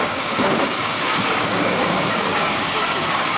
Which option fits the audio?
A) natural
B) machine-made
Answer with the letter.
B